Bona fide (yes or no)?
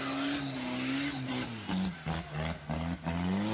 yes